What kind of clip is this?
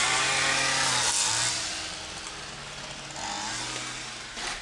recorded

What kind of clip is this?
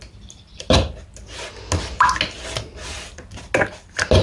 recorded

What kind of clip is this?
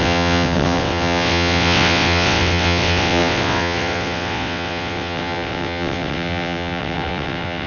remade